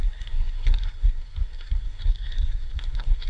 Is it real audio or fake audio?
fake